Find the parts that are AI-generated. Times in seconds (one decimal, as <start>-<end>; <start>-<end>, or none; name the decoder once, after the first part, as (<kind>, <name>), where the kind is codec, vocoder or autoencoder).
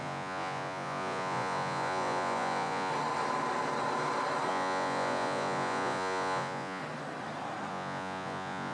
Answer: 0.0-2.9 (vocoder, Vocos); 4.5-6.8; 7.7-8.7